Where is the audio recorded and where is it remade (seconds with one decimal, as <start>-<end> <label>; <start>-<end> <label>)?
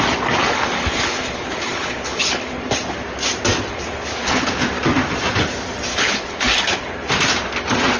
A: 0.0-0.4 recorded; 0.4-2.6 remade; 2.6-3.7 recorded; 3.7-4.5 remade; 4.5-5.9 recorded; 5.9-7.1 remade; 7.1-8.0 recorded